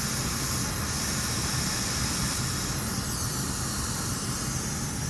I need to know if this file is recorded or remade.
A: recorded